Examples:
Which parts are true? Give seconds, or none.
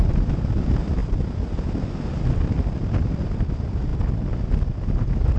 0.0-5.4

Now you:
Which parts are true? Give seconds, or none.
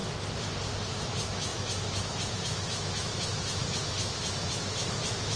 0.0-0.9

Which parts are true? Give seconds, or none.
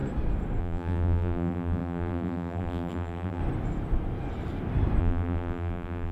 0.0-0.6; 3.4-5.0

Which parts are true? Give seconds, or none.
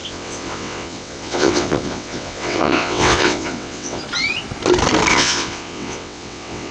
4.0-5.1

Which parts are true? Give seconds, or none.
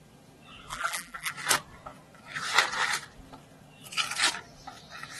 0.0-0.7; 1.3-5.2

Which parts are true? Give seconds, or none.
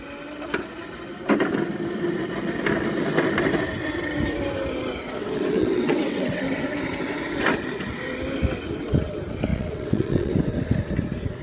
0.0-5.2; 6.4-9.5; 10.3-11.4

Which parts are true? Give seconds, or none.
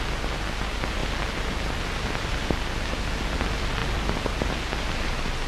0.0-5.5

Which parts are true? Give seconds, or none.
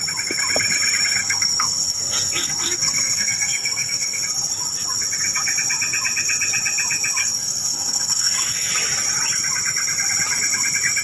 0.0-1.2; 4.2-7.2; 8.7-11.0